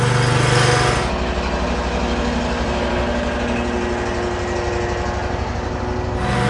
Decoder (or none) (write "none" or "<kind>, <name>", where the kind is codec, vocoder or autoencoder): none